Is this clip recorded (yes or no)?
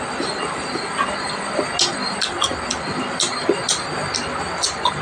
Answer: yes